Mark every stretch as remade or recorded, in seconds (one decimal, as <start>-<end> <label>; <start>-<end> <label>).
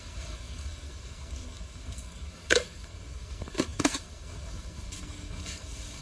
0.0-6.0 remade